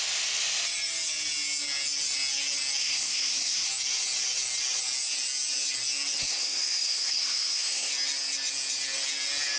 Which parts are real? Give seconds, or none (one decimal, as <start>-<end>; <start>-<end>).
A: 0.0-2.8; 3.7-6.2; 7.9-9.6